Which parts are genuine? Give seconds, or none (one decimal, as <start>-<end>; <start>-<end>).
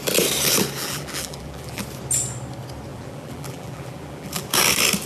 0.0-0.8; 1.8-2.9; 4.4-5.1